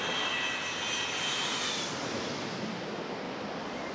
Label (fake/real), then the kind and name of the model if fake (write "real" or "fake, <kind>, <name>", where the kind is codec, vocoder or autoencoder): real